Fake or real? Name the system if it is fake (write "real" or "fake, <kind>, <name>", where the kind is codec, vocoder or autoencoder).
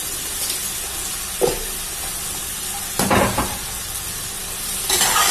real